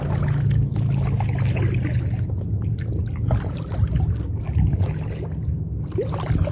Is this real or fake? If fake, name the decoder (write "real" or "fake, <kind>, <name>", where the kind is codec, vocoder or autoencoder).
real